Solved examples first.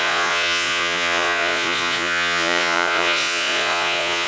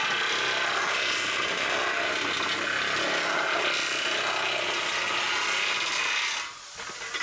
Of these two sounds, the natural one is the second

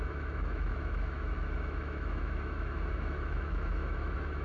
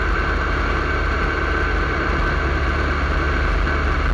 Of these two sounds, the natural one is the second